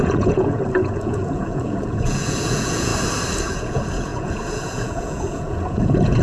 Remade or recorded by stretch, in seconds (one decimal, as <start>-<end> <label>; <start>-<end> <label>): 0.0-2.9 remade; 2.9-3.5 recorded; 3.5-6.2 remade